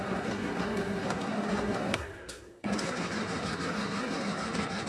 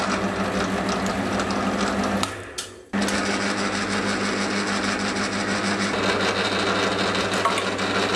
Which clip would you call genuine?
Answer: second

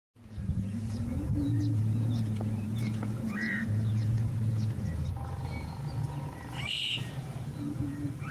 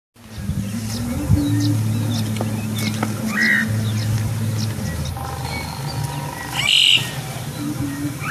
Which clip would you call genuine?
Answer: second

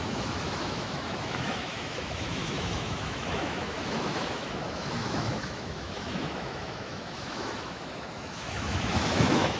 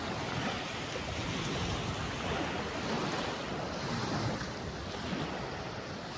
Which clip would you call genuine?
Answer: second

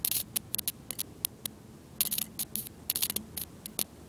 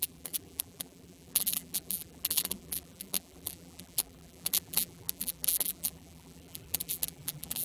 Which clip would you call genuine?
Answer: first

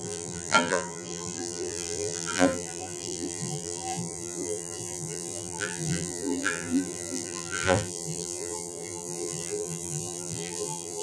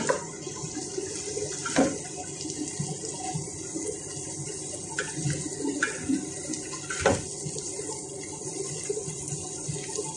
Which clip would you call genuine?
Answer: second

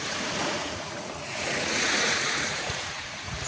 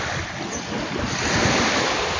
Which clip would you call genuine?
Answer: second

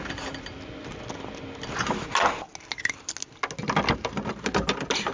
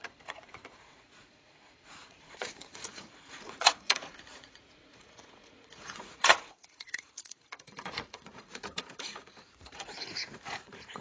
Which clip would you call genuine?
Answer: first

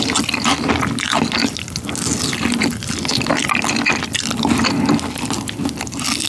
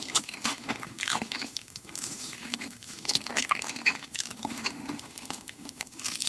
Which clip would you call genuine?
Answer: first